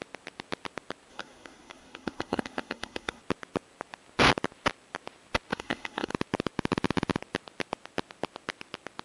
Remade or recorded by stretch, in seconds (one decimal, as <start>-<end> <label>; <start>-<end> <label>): 0.0-1.1 recorded; 1.1-3.2 remade; 3.2-5.5 recorded; 5.5-6.1 remade; 6.1-9.0 recorded